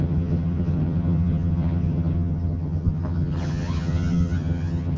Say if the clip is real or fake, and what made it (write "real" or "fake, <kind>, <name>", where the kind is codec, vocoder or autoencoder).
fake, vocoder, HiFi-GAN